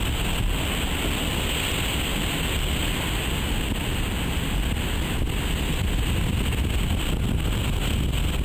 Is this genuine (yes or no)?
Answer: yes